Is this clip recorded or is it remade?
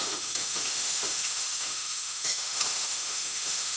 remade